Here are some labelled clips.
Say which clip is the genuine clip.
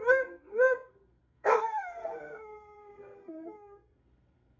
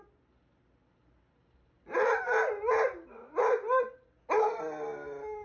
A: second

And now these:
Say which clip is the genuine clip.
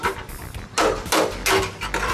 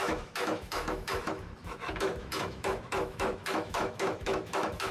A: first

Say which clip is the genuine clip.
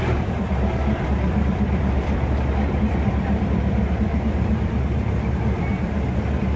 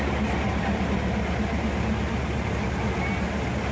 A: second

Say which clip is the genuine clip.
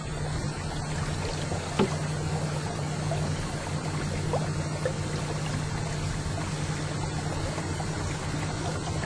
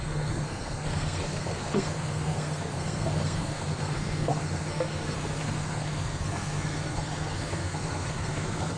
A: first